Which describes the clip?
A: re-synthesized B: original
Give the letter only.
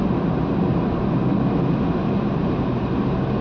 B